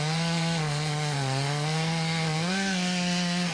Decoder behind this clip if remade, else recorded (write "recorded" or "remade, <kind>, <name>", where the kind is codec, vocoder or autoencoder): remade, codec, SNAC